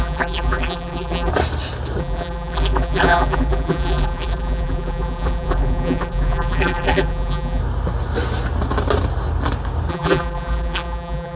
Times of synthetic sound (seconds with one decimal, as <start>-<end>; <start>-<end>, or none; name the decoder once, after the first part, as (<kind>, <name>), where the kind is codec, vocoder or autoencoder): 0.0-1.3 (vocoder, BigVGAN v2); 2.0-7.6; 9.9-11.4